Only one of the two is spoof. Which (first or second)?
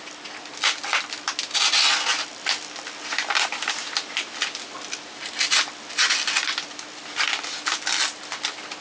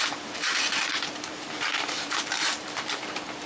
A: second